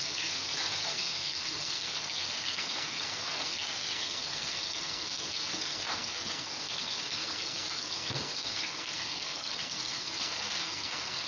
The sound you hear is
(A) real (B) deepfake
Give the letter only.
B